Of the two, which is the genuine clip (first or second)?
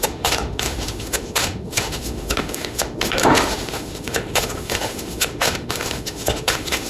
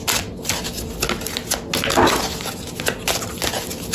second